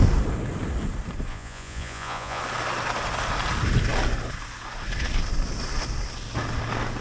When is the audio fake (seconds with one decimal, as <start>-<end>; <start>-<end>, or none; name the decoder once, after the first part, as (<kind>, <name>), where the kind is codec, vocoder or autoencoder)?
1.3-2.4 (vocoder, Vocos)